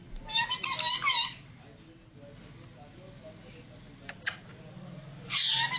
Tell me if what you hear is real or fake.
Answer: real